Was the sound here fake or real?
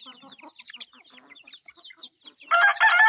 real